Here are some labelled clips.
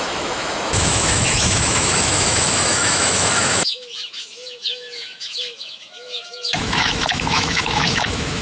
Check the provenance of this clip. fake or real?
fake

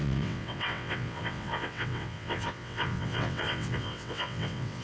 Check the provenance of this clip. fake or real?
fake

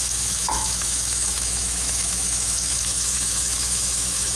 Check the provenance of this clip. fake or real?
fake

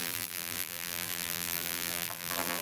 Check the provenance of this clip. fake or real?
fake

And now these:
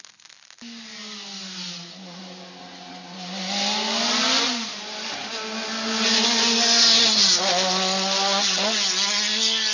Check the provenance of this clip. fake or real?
real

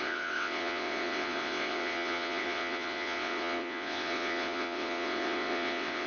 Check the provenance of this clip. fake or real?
fake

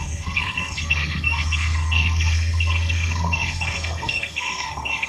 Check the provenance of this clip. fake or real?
fake